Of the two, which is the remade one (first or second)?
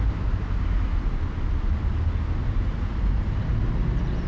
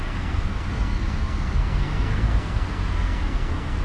second